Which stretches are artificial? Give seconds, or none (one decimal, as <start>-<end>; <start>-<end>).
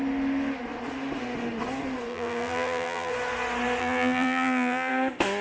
2.1-3.1; 3.8-4.9